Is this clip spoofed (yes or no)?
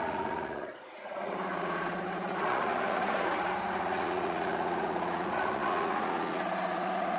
yes